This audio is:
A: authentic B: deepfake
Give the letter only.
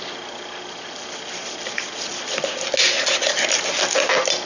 A